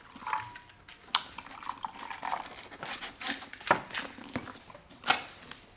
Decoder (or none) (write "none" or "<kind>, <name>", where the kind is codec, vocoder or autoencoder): none